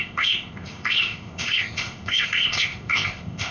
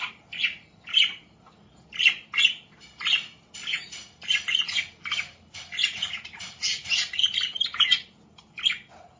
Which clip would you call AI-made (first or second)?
first